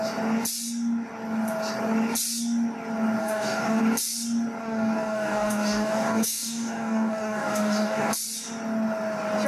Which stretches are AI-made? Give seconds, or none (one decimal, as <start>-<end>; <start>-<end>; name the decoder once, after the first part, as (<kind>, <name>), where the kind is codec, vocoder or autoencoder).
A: 3.2-3.8 (codec, DAC); 4.6-8.1